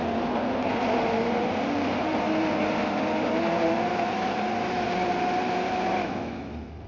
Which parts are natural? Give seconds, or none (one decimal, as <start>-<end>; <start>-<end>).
0.0-6.0; 6.5-6.9